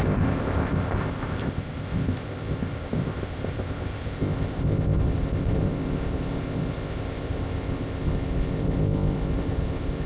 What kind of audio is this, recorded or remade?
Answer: remade